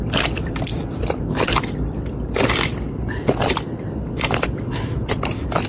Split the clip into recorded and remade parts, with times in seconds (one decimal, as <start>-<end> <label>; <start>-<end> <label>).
0.0-5.7 remade